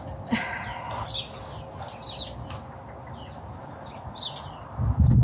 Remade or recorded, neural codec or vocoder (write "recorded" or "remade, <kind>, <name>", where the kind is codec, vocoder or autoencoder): recorded